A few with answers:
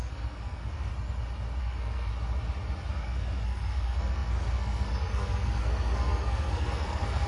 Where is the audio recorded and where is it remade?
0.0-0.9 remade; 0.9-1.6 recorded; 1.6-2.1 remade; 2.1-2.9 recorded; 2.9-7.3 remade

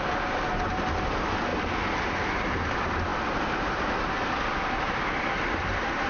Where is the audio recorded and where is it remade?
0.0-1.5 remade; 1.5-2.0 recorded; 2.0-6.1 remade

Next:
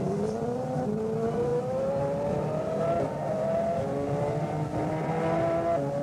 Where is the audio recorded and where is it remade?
0.0-6.0 recorded